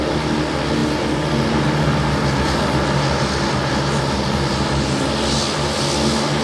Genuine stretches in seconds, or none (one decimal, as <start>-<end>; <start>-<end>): 0.0-6.4